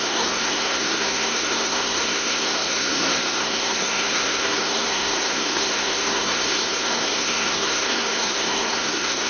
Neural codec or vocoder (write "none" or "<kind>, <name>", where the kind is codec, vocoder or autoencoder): codec, SNAC